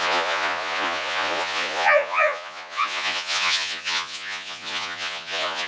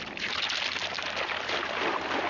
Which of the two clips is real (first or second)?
second